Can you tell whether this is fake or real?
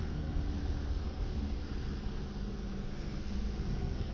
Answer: fake